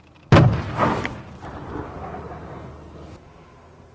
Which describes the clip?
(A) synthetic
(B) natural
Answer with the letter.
B